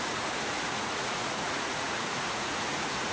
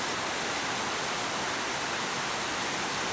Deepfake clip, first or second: first